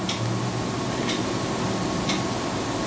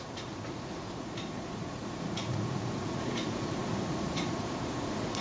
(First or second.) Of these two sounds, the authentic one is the first